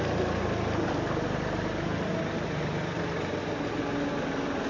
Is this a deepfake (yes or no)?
no